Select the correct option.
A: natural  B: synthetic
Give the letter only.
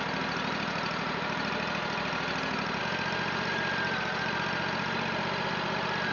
A